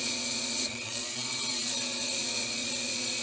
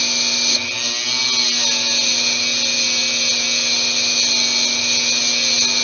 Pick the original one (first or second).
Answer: second